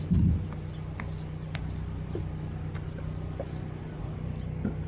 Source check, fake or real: real